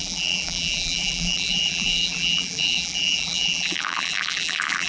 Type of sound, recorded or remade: remade